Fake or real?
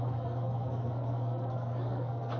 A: fake